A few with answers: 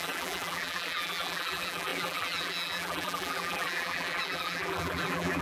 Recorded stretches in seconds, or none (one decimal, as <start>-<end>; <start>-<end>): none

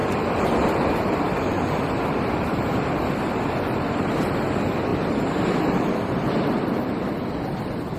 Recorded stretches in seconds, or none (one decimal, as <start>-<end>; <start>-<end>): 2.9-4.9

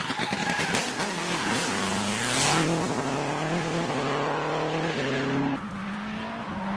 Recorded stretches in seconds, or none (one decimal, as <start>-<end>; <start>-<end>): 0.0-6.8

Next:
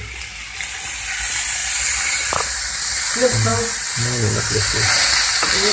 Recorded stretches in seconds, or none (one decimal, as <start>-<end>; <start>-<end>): 0.0-5.7